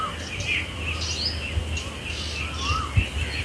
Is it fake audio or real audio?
real